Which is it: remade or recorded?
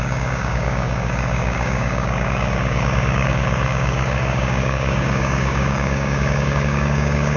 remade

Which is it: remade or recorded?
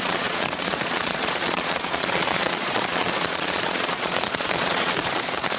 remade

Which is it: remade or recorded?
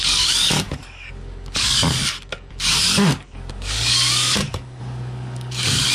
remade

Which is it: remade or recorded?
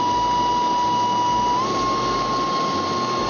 recorded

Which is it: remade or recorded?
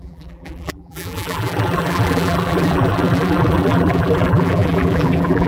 remade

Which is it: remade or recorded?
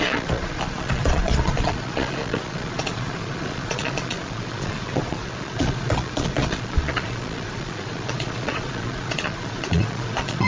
remade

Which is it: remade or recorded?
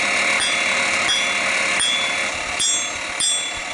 recorded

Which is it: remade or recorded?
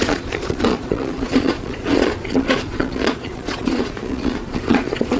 remade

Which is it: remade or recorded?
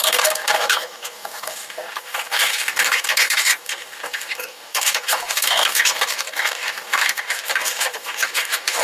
remade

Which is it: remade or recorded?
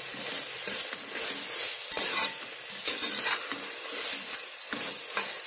recorded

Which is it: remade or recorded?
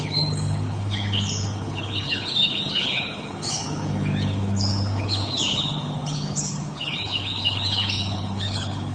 remade